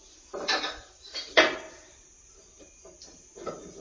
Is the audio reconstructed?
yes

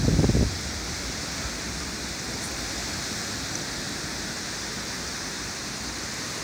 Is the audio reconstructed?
no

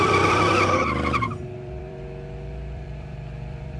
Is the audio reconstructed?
yes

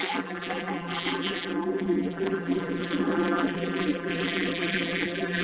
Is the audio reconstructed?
yes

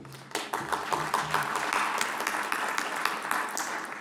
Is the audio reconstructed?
no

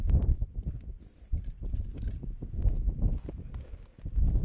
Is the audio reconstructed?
no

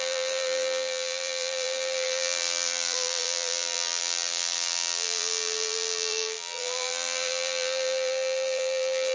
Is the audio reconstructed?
yes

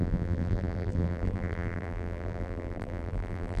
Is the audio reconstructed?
yes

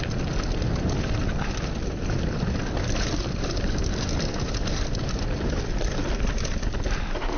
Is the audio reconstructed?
no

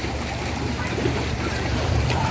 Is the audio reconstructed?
yes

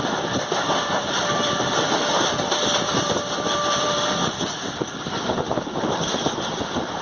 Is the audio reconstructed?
yes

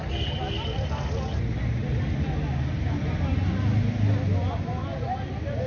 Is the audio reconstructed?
no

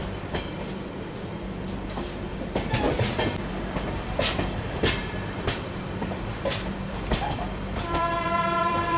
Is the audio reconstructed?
yes